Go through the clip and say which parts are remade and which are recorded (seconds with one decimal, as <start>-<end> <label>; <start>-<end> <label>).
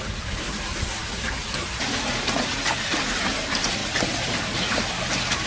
0.0-5.5 recorded